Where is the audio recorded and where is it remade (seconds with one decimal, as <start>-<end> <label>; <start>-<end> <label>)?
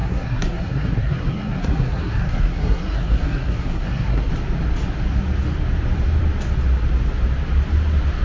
0.0-4.3 remade; 4.3-8.2 recorded